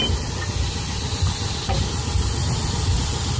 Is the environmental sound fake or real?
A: real